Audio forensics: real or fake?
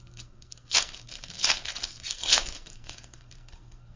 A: fake